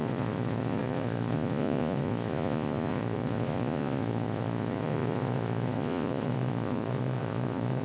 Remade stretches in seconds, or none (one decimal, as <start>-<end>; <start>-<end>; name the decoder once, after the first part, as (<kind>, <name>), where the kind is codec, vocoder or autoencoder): 0.0-7.8 (vocoder, Vocos)